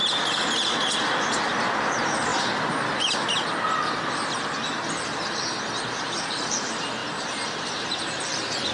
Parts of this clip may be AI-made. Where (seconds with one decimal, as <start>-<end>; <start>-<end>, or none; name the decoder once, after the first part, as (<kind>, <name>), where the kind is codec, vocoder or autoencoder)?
7.0-8.0 (vocoder, BigVGAN v2)